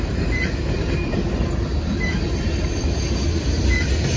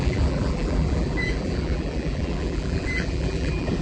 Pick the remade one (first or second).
second